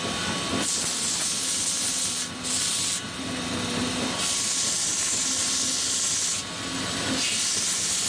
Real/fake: real